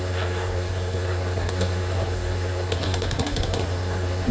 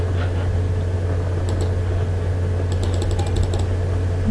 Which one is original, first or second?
second